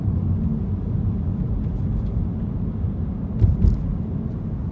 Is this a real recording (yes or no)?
yes